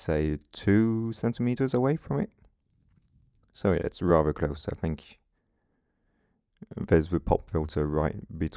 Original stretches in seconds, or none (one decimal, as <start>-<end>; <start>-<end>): 1.6-3.0; 4.1-8.6